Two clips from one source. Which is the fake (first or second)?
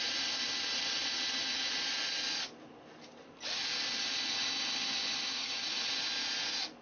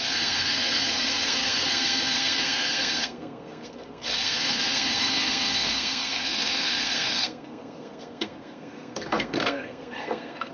second